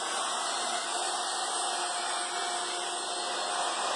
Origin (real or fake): real